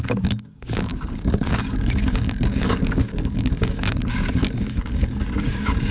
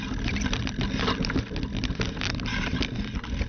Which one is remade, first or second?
first